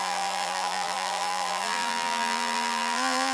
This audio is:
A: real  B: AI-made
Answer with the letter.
B